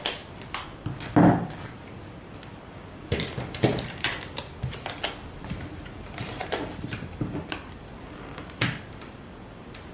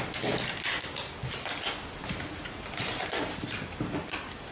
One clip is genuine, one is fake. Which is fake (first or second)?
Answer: first